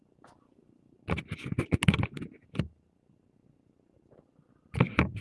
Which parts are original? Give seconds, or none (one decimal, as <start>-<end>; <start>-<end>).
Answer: 0.0-5.2